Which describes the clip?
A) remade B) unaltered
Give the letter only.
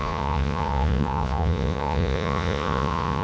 A